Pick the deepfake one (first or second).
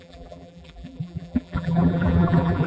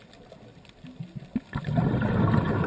first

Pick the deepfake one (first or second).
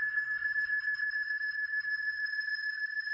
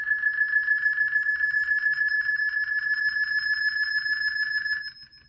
first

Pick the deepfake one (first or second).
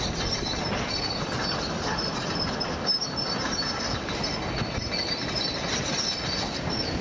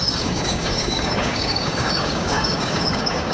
second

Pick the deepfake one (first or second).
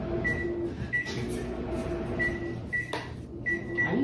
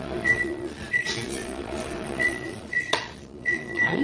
second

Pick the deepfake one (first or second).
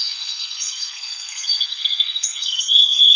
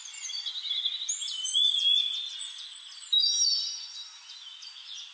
first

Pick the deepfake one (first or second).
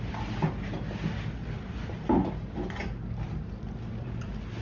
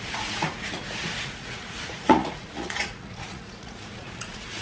second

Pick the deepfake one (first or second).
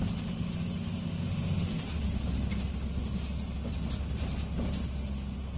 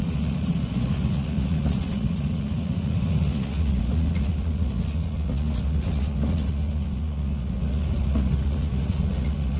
second